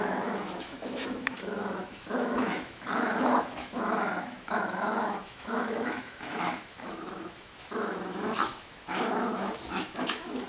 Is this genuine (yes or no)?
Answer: no